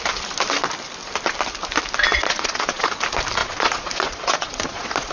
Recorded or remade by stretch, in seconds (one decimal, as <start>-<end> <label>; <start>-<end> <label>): 0.0-2.1 recorded; 2.1-2.9 remade; 2.9-3.4 recorded; 3.4-5.1 remade